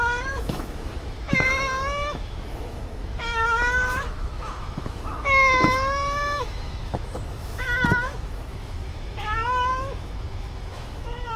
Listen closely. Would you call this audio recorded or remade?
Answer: remade